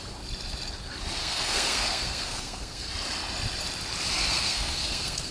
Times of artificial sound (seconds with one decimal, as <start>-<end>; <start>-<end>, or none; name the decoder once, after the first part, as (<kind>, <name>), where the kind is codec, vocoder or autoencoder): 1.2-2.9 (codec, SNAC); 4.2-5.3